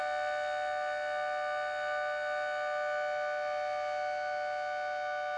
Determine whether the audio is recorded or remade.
recorded